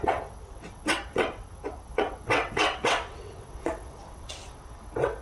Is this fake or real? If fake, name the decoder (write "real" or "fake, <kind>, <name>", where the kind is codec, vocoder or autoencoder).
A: fake, vocoder, WaveNeXt